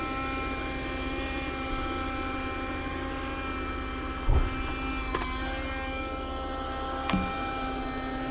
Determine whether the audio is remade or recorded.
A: recorded